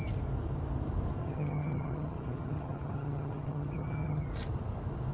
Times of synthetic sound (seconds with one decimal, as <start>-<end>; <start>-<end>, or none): 1.2-4.3